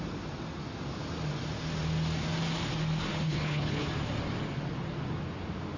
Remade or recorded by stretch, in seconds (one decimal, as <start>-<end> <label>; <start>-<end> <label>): 0.0-3.1 recorded; 3.1-3.9 remade; 3.9-5.8 recorded